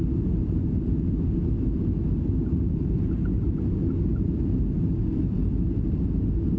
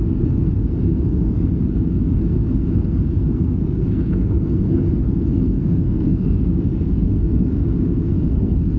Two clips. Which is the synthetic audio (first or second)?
second